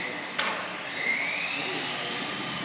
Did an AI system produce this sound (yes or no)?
no